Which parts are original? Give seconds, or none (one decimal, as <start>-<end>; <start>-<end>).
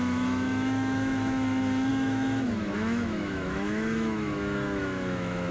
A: none